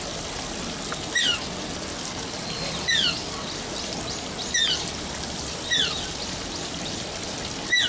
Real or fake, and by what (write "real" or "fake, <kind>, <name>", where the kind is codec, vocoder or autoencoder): real